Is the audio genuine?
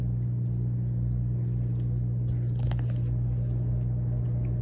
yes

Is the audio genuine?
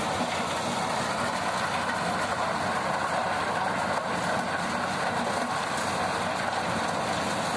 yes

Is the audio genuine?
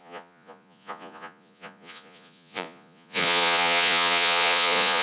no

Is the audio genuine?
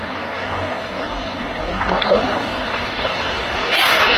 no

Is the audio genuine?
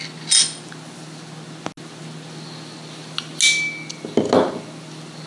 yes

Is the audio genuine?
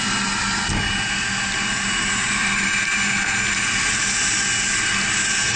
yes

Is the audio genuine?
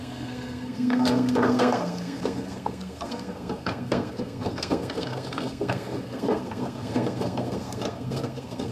no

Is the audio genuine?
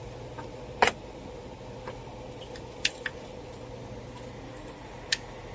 yes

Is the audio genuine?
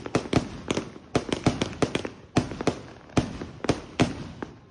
yes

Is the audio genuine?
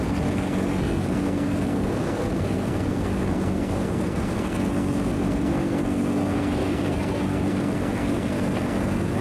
no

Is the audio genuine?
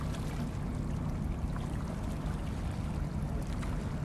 yes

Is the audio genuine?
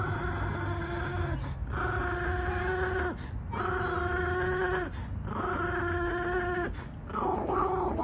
yes